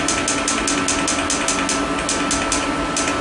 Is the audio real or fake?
real